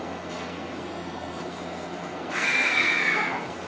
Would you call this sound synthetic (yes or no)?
yes